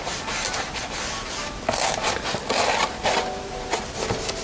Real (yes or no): yes